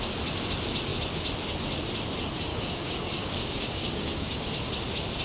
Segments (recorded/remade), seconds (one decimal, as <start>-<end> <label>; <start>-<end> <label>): 0.0-2.5 recorded; 2.5-4.7 remade; 4.7-5.2 recorded